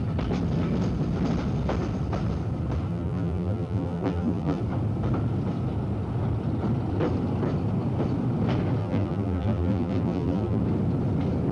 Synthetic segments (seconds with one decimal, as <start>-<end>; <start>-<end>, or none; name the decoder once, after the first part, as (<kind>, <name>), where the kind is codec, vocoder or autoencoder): 2.9-4.6 (vocoder, BigVGAN v2); 8.8-10.6